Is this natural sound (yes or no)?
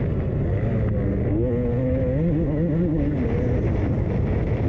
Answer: yes